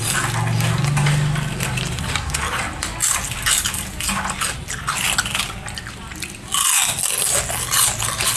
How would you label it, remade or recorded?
recorded